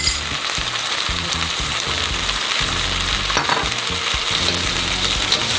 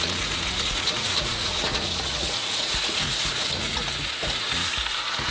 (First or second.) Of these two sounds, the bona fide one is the first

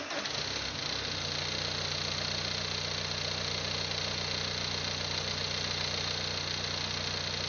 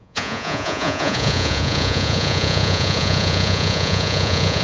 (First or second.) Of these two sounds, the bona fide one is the first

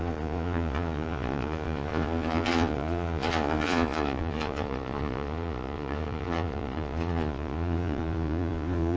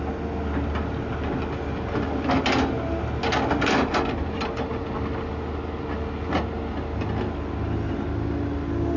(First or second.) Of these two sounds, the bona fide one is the second